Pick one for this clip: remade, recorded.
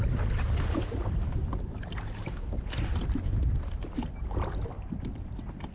recorded